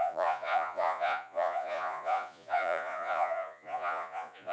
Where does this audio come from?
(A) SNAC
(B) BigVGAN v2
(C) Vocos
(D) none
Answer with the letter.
C